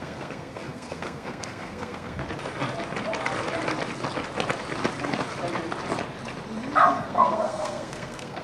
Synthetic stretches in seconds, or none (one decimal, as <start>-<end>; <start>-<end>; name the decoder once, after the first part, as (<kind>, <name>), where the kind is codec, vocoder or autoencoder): 0.0-2.2 (codec, SNAC); 6.9-8.4